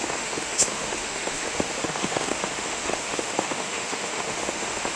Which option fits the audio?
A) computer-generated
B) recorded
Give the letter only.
A